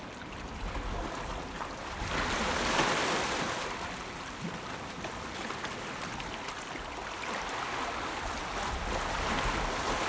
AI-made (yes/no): no